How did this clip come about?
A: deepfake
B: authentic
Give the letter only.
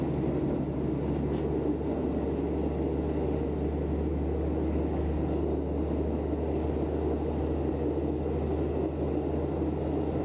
B